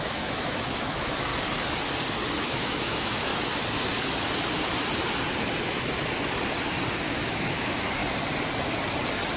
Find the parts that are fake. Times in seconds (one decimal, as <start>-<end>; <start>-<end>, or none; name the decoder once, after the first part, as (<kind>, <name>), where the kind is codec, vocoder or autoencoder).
0.0-1.3 (autoencoder, DAC-VAE); 2.4-3.3; 7.1-8.0